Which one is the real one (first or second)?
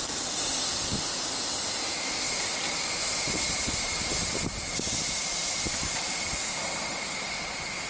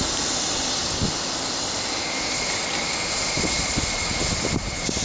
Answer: second